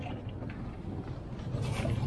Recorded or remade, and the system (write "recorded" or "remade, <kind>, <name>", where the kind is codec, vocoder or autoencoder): recorded